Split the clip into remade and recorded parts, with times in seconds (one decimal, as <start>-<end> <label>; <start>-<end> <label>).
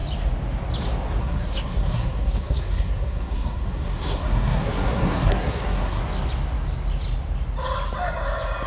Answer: 0.0-1.2 recorded; 1.2-6.0 remade; 6.0-8.7 recorded